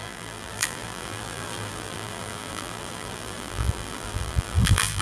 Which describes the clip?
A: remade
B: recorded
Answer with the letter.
A